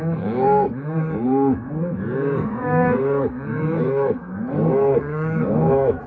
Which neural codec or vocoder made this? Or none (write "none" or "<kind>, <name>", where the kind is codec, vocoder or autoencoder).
codec, SNAC